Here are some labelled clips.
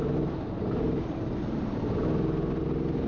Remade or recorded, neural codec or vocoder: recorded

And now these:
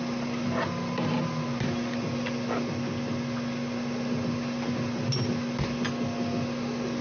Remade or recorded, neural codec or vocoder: recorded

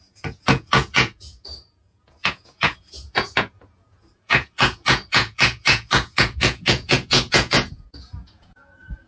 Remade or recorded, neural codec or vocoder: remade, vocoder, Vocos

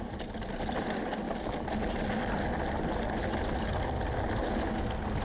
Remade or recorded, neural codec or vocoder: recorded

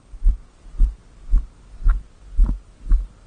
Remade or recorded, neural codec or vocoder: recorded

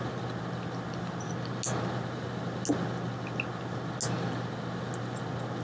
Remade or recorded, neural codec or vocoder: recorded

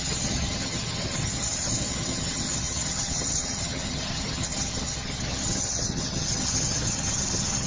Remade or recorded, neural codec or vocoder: remade, vocoder, HiFi-GAN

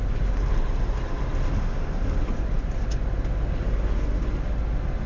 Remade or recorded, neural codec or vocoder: recorded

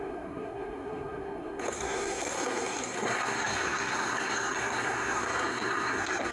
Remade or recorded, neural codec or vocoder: remade, codec, SNAC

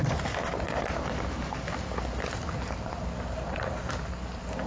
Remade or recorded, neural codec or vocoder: recorded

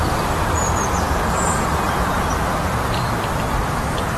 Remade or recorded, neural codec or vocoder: remade, vocoder, BigVGAN v2